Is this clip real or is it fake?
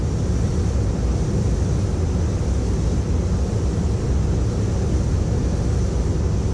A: real